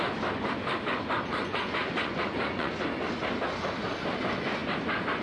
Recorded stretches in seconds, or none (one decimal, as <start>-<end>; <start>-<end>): 0.0-1.3; 2.7-5.2